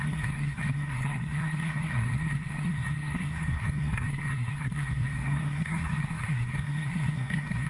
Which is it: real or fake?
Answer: fake